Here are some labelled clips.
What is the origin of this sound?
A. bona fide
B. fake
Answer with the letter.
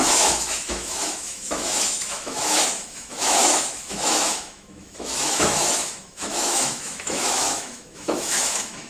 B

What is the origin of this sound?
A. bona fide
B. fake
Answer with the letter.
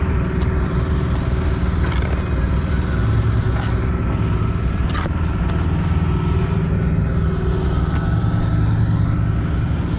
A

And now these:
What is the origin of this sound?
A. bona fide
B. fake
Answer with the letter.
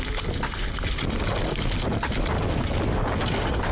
A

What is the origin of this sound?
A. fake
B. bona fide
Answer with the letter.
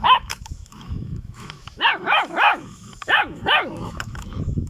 A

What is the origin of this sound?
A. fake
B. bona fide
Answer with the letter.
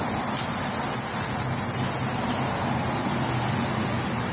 B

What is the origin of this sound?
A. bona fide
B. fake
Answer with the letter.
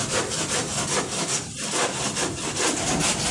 A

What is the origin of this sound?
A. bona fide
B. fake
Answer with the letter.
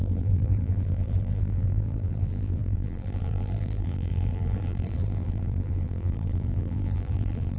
B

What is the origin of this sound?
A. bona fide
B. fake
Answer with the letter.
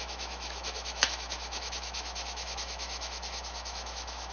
B